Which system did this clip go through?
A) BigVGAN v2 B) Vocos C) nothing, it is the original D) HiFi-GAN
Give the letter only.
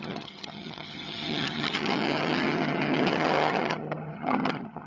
D